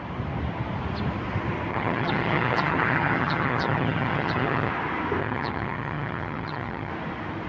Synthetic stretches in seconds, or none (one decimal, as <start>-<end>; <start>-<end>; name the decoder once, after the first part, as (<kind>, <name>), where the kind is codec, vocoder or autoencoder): 1.7-4.7 (vocoder, HiFi-GAN); 5.2-6.9